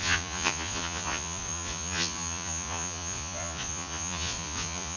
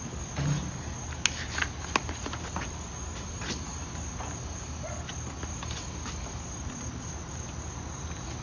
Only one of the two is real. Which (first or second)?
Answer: second